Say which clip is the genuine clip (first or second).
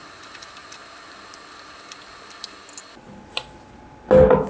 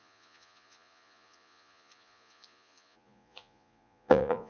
first